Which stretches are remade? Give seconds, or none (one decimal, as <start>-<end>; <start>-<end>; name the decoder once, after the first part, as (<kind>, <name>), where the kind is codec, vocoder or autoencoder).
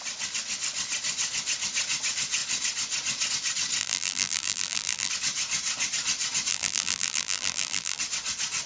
3.8-5.1 (vocoder, BigVGAN v2); 6.5-8.0